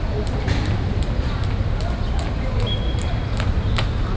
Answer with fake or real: real